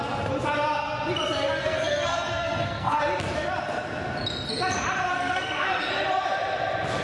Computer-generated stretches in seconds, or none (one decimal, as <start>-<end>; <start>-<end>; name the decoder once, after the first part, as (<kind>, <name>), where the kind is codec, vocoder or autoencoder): 1.6-3.0 (codec, SNAC); 5.1-5.9